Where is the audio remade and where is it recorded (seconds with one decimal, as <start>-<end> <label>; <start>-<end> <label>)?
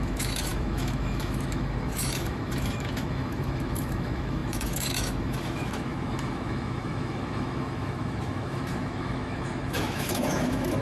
0.0-10.8 remade